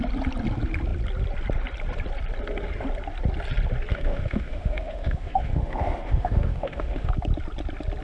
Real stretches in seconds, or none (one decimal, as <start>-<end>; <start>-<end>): 0.0-3.9; 7.1-8.0